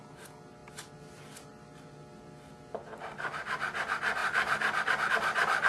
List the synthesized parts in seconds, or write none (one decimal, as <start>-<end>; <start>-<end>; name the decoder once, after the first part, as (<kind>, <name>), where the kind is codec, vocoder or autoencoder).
none